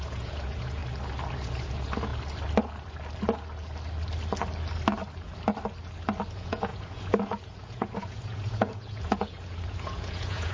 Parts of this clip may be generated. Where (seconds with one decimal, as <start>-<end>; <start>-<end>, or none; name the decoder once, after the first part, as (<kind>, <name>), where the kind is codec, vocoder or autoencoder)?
0.0-0.8 (vocoder, Vocos); 1.3-2.1; 6.3-10.5